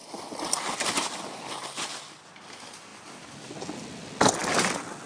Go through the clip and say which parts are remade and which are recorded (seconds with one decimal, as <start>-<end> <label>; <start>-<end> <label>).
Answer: 0.0-5.1 recorded